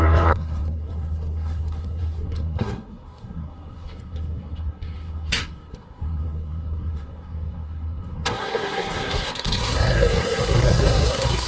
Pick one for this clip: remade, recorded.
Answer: remade